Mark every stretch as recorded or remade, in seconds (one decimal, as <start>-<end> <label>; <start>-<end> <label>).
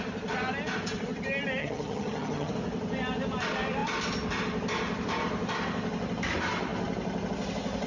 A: 0.0-1.6 recorded; 1.6-2.5 remade; 2.5-7.9 recorded